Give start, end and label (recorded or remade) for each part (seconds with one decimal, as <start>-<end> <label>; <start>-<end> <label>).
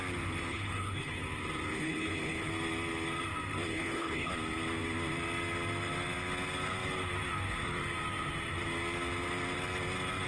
0.0-0.5 recorded; 0.5-1.2 remade; 1.2-1.7 recorded; 1.7-2.5 remade; 2.5-3.7 recorded; 3.7-4.3 remade; 4.3-10.3 recorded